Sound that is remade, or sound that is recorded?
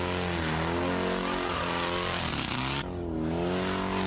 recorded